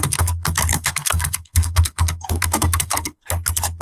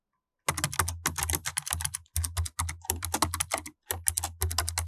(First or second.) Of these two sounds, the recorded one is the second